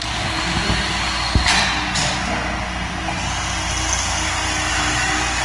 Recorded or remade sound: recorded